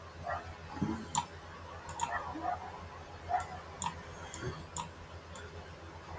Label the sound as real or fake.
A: real